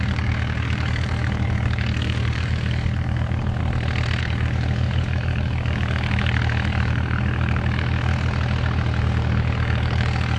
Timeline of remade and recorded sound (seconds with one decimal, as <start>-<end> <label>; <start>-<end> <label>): 0.0-3.6 remade; 3.6-4.2 recorded; 4.2-8.1 remade; 8.1-9.0 recorded; 9.0-10.4 remade